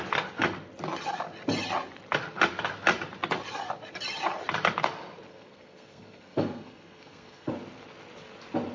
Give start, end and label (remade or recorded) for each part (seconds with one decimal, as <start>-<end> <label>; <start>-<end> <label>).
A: 0.0-5.3 recorded; 5.3-7.5 remade; 7.5-8.7 recorded